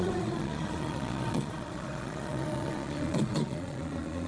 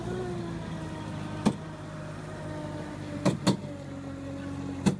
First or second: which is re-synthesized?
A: first